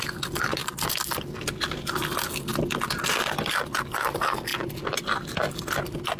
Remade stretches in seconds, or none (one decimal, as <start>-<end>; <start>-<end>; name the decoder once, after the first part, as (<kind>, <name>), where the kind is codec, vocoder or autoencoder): none